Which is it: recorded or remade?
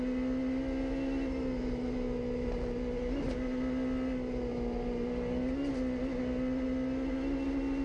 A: recorded